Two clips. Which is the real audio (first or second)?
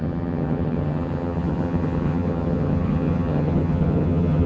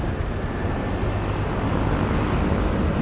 second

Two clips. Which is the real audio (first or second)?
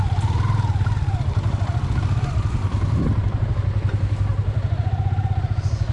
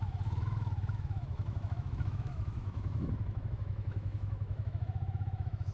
first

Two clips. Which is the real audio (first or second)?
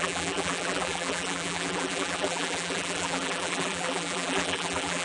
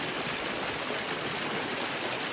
second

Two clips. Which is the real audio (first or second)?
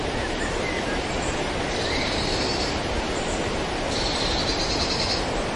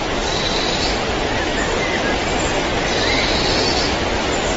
second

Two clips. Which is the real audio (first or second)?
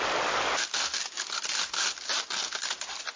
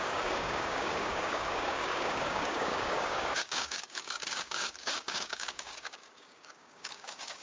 first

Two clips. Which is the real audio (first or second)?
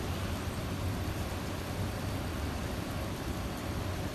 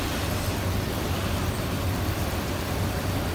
second